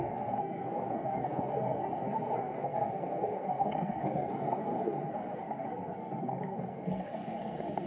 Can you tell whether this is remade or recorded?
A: remade